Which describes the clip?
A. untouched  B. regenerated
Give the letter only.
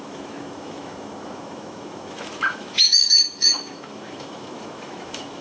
B